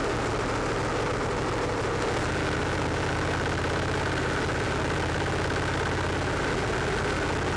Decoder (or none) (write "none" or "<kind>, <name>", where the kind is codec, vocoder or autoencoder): none